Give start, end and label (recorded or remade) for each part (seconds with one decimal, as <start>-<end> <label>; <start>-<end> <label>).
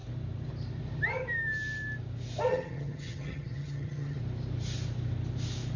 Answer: 0.0-2.5 recorded; 2.5-4.2 remade; 4.2-5.8 recorded